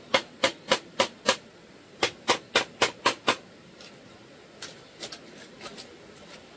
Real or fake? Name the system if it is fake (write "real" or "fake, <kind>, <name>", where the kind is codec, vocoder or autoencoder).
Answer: real